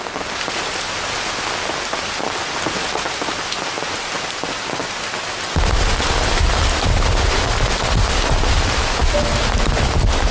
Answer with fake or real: real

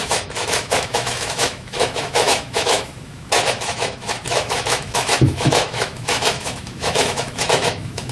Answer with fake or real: fake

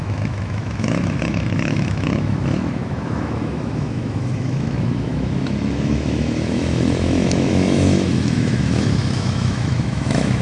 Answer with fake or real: fake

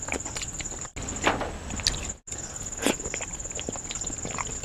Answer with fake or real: real